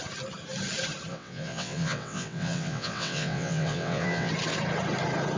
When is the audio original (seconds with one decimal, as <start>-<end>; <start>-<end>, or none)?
0.0-1.1; 4.3-5.4